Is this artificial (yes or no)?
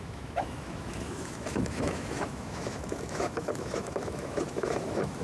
yes